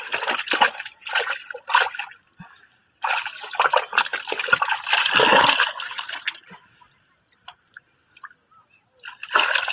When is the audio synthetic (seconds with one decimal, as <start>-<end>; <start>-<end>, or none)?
none